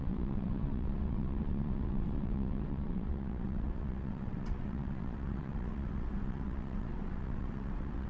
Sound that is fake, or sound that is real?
fake